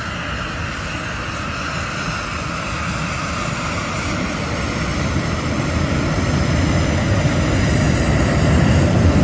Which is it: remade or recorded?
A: recorded